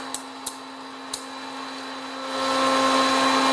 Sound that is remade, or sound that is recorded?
recorded